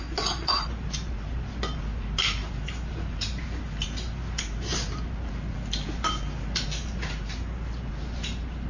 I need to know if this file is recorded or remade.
recorded